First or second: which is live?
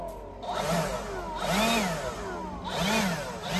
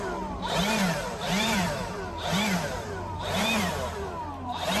first